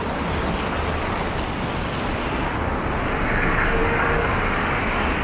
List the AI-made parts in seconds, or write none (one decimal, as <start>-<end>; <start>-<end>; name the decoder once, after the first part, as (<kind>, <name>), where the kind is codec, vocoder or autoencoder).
none